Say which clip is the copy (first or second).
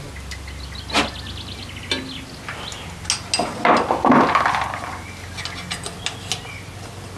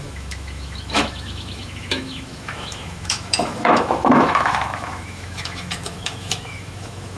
second